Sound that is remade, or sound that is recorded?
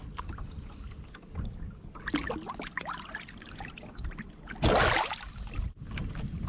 recorded